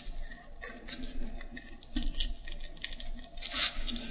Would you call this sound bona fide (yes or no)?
yes